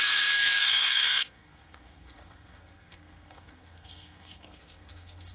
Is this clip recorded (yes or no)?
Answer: no